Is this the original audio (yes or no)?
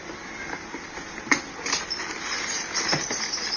yes